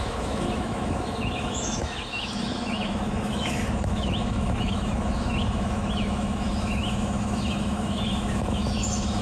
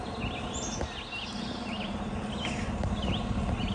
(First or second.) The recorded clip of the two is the second